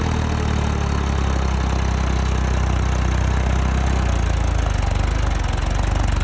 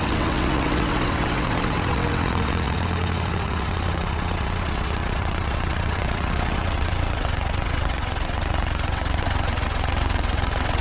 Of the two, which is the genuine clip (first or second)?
first